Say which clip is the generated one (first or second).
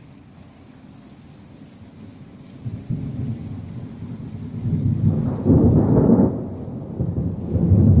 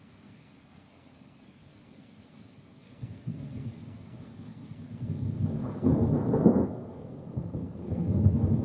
second